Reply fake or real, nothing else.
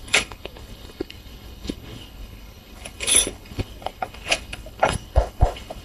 fake